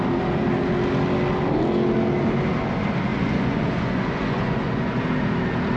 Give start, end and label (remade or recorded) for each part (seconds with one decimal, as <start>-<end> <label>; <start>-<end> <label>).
0.0-3.1 recorded; 3.1-5.0 remade; 5.0-5.8 recorded